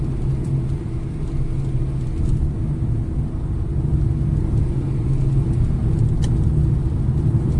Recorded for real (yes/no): yes